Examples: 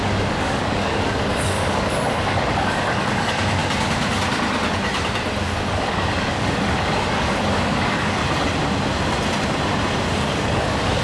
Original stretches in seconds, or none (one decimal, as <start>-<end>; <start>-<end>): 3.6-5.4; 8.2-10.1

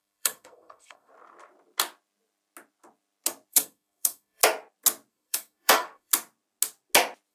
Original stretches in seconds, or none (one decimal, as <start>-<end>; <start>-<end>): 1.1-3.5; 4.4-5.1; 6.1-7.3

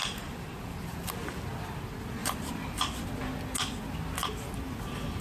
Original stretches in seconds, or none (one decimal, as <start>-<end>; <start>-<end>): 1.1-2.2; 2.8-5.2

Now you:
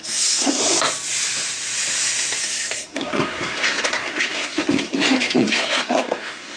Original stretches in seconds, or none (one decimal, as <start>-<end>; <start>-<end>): 0.6-2.4

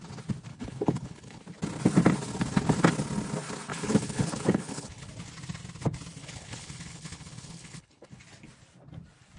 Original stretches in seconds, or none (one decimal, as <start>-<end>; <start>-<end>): 0.0-0.5; 1.4-3.7; 5.1-6.2; 8.2-9.4